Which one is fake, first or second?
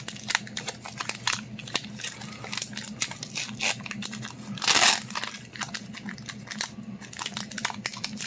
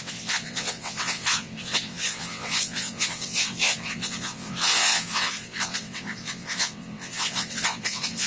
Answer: second